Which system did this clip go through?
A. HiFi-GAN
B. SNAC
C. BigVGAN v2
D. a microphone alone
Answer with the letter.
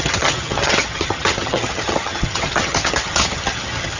A